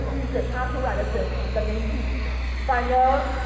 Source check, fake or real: real